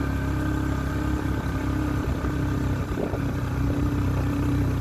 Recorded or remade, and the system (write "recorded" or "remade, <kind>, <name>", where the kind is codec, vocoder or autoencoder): recorded